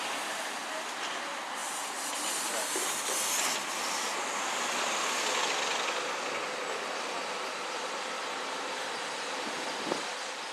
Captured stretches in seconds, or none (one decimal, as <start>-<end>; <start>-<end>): 0.0-10.5